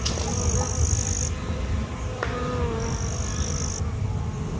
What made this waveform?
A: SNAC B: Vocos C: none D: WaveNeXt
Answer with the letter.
C